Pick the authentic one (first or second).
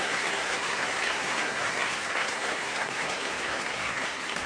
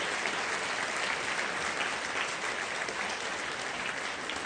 second